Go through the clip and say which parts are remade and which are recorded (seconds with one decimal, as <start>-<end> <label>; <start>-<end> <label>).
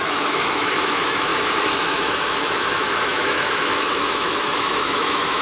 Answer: 0.0-1.3 remade; 1.3-1.9 recorded; 1.9-5.4 remade